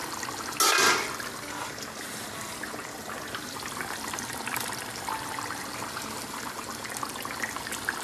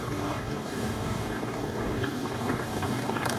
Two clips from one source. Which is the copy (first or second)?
second